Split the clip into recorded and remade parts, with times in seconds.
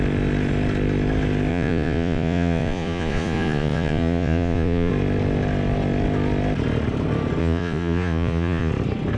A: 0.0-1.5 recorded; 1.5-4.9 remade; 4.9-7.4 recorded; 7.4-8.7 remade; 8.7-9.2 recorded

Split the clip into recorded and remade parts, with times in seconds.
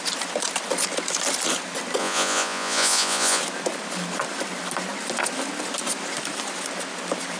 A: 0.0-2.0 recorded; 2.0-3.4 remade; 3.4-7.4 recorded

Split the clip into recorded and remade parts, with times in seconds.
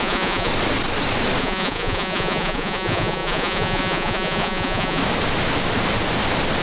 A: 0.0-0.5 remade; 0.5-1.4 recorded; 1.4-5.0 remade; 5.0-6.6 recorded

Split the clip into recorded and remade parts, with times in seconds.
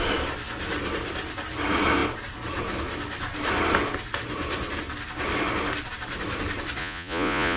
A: 0.0-6.8 recorded; 6.8-7.6 remade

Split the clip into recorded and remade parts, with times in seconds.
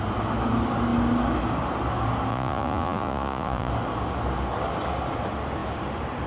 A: 0.0-2.3 recorded; 2.3-3.7 remade; 3.7-6.3 recorded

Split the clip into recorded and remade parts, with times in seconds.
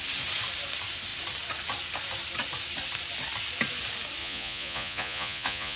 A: 0.0-4.2 recorded; 4.2-5.8 remade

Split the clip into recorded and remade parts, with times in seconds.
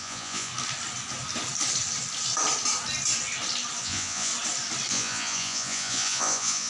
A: 0.0-0.5 remade; 0.5-3.8 recorded; 3.8-4.3 remade; 4.3-4.9 recorded; 4.9-6.7 remade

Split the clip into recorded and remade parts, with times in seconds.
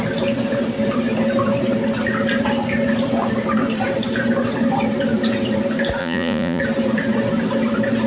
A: 0.0-6.0 recorded; 6.0-6.6 remade; 6.6-8.1 recorded